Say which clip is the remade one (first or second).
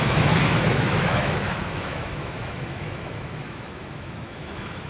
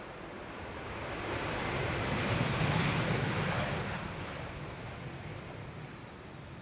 first